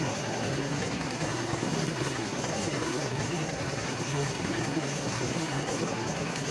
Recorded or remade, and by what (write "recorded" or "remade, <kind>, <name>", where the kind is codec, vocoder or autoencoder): remade, codec, SNAC